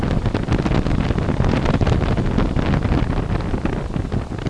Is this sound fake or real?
real